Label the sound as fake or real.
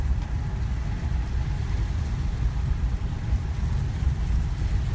real